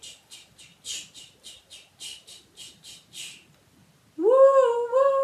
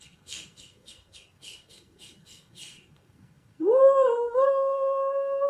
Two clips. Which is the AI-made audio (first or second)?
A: second